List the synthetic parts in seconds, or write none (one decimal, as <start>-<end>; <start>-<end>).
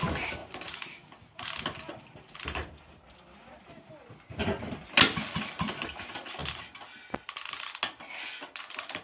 0.0-0.4; 2.3-3.6; 5.8-6.4; 8.6-9.0